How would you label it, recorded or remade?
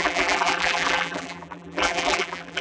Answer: remade